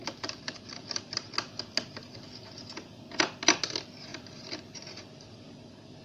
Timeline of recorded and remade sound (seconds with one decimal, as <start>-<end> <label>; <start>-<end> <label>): 0.0-1.2 remade; 1.2-4.1 recorded; 4.1-5.0 remade; 5.0-6.0 recorded

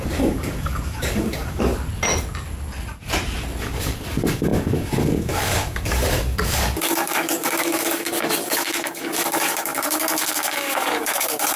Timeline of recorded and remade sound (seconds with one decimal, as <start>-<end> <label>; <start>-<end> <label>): 0.0-1.7 remade; 1.7-3.6 recorded; 3.6-11.6 remade